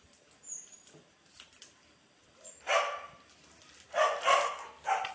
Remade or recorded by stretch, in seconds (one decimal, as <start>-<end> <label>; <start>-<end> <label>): 0.0-5.1 recorded